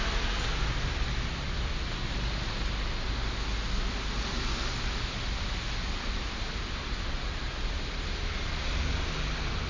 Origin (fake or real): real